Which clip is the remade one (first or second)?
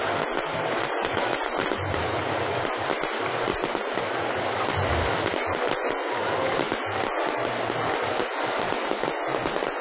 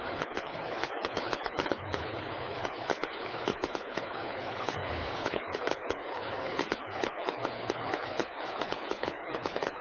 second